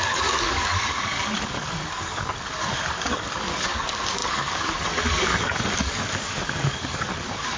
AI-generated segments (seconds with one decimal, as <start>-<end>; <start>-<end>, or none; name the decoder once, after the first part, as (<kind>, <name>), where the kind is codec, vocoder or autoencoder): 0.0-7.6 (codec, DAC)